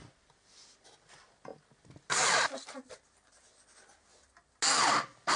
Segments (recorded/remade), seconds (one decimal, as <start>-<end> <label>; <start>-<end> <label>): 0.0-5.4 recorded